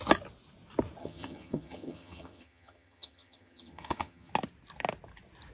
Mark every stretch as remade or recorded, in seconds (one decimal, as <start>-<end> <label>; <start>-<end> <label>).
0.0-1.0 recorded; 1.0-4.3 remade; 4.3-5.5 recorded

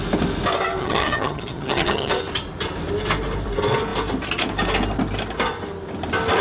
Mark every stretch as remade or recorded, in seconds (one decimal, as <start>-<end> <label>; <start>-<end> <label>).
0.0-0.8 recorded; 0.8-2.1 remade; 2.1-6.4 recorded

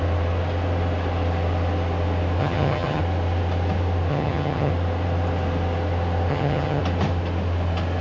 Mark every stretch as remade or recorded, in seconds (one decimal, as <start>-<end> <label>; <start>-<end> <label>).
0.0-2.4 recorded; 2.4-3.0 remade; 3.0-4.1 recorded; 4.1-4.7 remade; 4.7-6.3 recorded; 6.3-6.8 remade; 6.8-8.0 recorded

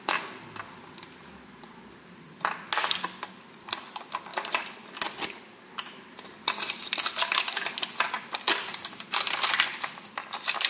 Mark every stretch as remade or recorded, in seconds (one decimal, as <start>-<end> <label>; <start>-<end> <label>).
0.0-10.7 recorded